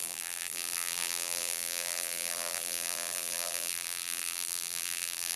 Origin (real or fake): fake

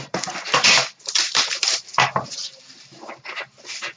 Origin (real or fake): fake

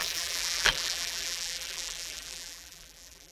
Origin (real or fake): fake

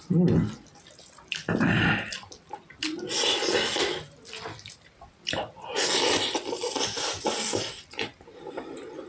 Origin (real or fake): real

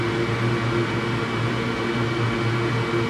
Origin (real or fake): real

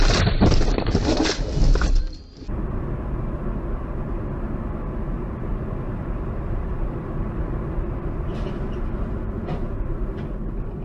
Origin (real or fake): fake